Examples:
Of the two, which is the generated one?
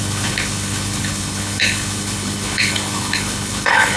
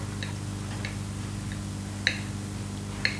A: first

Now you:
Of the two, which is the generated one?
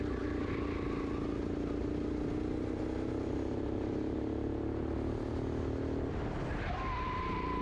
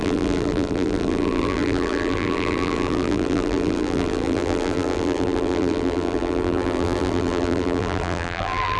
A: second